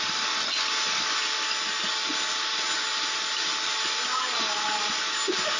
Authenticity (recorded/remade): recorded